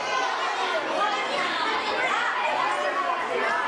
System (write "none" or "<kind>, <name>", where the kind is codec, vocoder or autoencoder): none